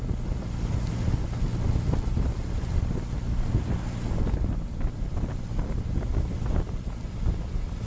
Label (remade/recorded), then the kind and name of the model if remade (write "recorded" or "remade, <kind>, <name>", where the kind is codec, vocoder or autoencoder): recorded